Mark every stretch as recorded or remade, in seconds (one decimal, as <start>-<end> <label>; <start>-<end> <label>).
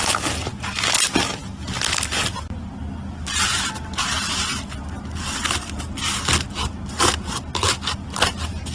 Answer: 0.0-8.7 recorded